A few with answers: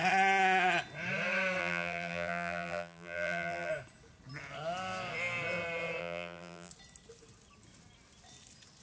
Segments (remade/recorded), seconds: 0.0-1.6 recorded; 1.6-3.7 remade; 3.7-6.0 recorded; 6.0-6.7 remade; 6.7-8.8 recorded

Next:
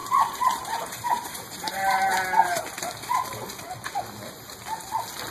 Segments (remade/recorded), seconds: 0.0-2.6 remade; 2.6-5.3 recorded

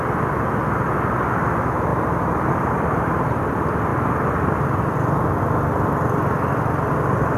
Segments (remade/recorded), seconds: 0.0-1.9 recorded; 1.9-3.4 remade; 3.4-7.4 recorded

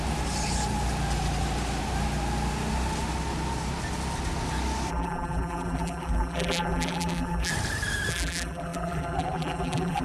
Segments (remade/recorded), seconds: 0.0-4.9 recorded; 4.9-7.5 remade; 7.5-8.1 recorded; 8.1-10.0 remade

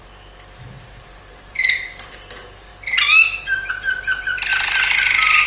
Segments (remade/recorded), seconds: 0.0-2.7 remade; 2.7-3.7 recorded; 3.7-5.5 remade